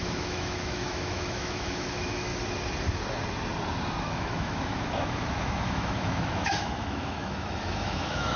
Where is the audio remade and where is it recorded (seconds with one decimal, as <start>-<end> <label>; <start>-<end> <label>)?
0.0-2.3 remade; 2.3-4.0 recorded; 4.0-8.4 remade